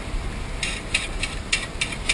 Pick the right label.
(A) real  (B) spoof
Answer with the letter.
B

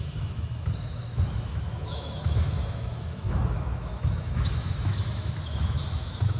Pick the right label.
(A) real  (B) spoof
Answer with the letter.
B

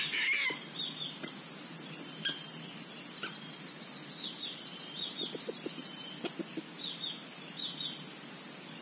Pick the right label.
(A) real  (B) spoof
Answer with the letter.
A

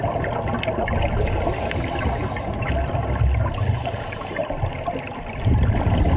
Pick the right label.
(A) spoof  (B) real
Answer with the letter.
B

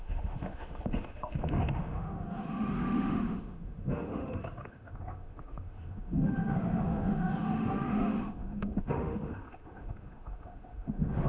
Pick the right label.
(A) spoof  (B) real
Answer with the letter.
A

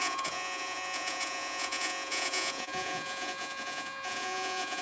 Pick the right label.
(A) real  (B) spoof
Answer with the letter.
B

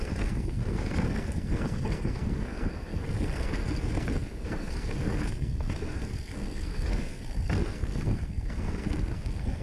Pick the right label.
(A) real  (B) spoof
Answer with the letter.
B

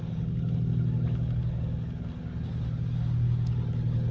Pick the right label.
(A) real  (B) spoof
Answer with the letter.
A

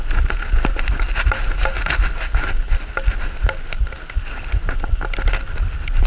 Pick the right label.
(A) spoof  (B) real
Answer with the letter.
B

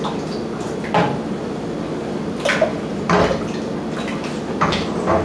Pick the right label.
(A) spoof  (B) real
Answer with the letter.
B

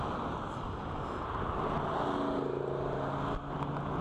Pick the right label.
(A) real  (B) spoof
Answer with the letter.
A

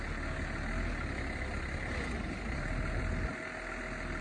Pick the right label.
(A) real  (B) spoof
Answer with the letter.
A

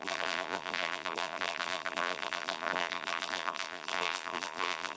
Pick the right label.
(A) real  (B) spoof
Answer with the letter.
B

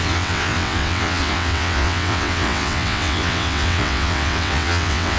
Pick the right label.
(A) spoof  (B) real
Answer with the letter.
A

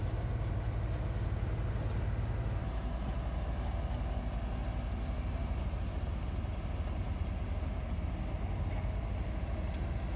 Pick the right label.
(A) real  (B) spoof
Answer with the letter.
A